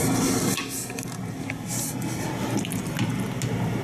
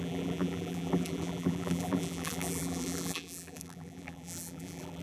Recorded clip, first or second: first